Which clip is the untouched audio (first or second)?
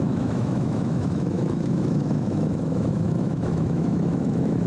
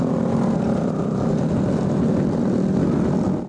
second